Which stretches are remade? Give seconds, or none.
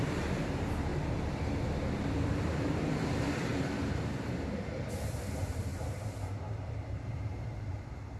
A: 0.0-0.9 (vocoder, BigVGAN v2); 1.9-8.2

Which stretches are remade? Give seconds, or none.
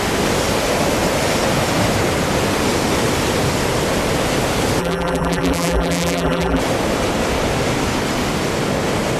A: 4.8-6.6 (vocoder, BigVGAN v2)